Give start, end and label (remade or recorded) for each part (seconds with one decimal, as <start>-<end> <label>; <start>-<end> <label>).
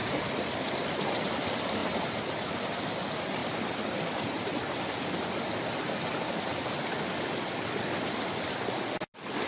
0.0-1.0 remade; 1.0-3.4 recorded; 3.4-4.5 remade; 4.5-9.5 recorded